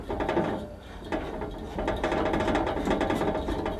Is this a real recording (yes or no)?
yes